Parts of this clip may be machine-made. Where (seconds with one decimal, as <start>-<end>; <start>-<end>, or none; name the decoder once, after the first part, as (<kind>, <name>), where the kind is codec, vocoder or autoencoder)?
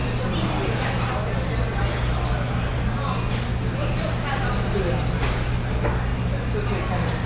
none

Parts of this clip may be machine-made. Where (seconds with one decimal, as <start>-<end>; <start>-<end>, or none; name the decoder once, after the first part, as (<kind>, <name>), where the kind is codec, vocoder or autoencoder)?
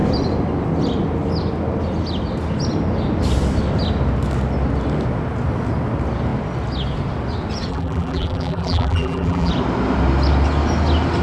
7.7-9.5 (vocoder, BigVGAN v2)